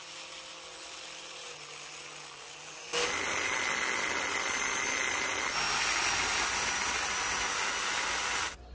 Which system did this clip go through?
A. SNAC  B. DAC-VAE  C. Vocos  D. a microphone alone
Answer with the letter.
D